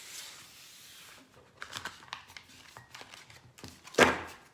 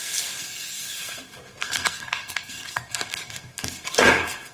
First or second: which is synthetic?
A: second